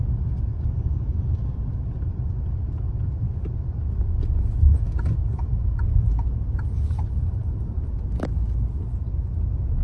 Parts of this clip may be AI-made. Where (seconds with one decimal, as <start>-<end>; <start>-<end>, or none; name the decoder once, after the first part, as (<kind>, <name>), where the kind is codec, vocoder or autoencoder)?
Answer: 1.1-3.6 (vocoder, BigVGAN v2)